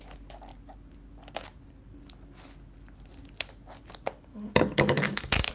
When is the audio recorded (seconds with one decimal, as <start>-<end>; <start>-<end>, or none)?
0.0-4.3